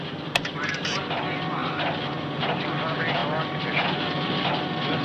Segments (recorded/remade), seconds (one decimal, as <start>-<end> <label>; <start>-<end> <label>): 0.0-1.6 recorded; 1.6-2.1 remade; 2.1-5.0 recorded